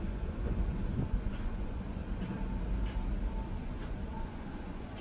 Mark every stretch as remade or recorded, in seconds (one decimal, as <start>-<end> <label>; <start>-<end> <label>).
0.0-2.0 remade; 2.0-3.5 recorded; 3.5-5.0 remade